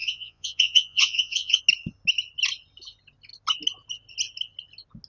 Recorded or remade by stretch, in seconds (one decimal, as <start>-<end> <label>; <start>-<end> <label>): 0.0-1.6 remade; 1.6-5.1 recorded